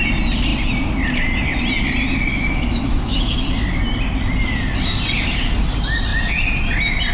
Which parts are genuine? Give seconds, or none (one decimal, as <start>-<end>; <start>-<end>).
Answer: 0.0-2.3; 3.4-7.1